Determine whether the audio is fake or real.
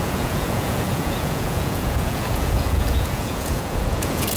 fake